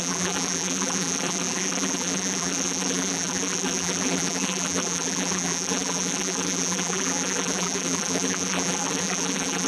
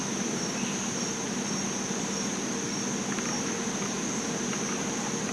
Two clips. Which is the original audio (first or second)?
second